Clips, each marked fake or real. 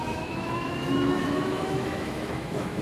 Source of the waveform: fake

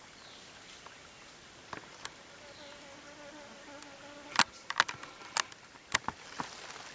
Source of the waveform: real